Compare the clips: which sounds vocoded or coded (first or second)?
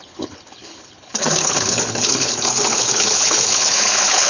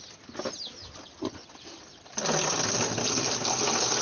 first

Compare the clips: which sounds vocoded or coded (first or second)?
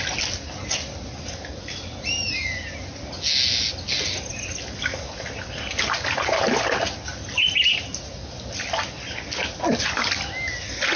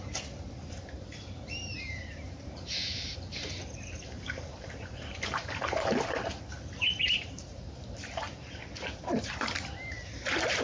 second